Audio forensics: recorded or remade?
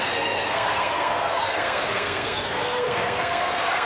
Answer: remade